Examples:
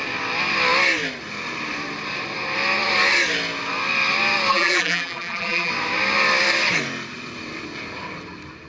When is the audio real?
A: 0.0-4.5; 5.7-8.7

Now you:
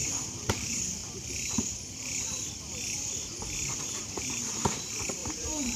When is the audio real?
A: 1.0-3.9

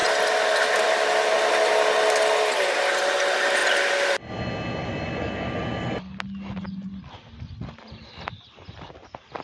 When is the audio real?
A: 0.9-3.6; 4.3-4.8; 5.3-9.4

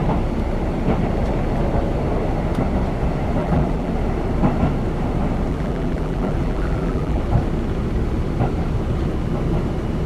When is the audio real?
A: 0.0-3.4; 3.9-5.5; 7.2-10.1

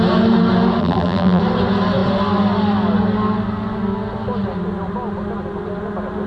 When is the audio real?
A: 0.0-0.8; 1.4-6.3

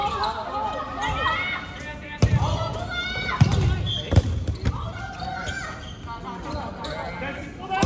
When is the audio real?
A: 0.0-7.9